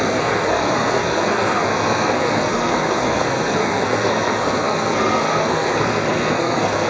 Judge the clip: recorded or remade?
remade